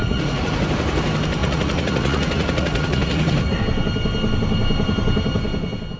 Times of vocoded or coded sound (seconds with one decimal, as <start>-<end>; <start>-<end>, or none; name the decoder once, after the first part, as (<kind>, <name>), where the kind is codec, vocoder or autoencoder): 0.0-0.5 (vocoder, Vocos); 1.4-3.6